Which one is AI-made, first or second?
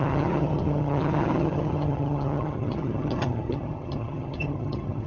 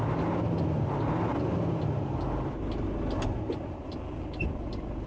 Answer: first